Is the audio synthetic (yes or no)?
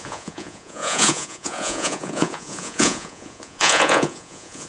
yes